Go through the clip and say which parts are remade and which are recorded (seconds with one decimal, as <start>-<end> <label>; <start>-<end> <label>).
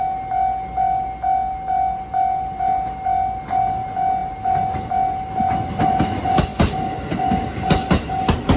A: 0.0-8.6 recorded